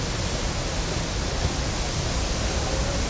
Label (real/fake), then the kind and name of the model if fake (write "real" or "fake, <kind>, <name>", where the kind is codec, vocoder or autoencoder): real